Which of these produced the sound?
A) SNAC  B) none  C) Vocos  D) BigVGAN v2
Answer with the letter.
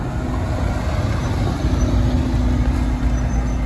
B